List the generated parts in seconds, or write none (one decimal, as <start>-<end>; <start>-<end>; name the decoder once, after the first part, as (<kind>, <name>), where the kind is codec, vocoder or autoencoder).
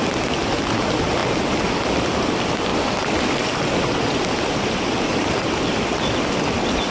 2.7-6.3 (vocoder, BigVGAN v2)